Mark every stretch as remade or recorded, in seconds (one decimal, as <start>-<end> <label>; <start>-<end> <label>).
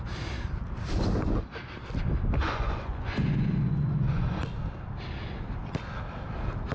0.0-2.4 recorded; 2.4-4.4 remade; 4.4-6.7 recorded